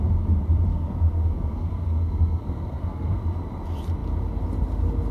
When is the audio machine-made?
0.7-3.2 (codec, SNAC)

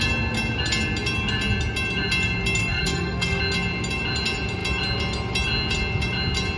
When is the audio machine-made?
2.6-3.4 (codec, SNAC)